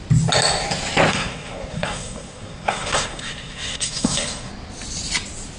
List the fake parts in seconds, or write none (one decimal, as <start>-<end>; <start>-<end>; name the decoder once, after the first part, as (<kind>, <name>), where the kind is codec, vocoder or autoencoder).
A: 1.1-4.5 (codec, SNAC)